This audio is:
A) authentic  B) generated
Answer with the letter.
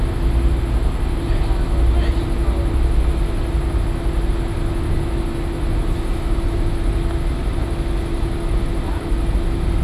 A